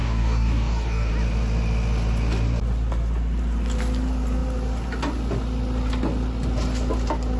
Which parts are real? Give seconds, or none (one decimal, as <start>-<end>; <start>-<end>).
1.1-7.4